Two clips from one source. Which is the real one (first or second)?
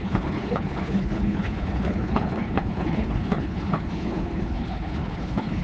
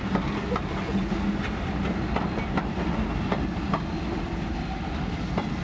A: second